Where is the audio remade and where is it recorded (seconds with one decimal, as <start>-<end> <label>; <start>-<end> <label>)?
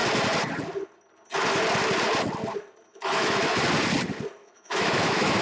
0.0-2.9 recorded; 2.9-3.6 remade; 3.6-4.4 recorded; 4.4-5.4 remade